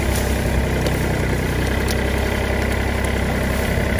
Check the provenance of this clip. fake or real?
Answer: real